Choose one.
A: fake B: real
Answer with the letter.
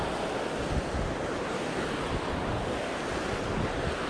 B